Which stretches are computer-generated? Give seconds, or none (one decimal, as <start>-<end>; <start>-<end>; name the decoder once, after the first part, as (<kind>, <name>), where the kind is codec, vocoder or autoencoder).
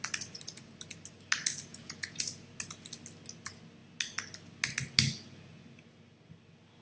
1.7-2.2 (vocoder, Vocos)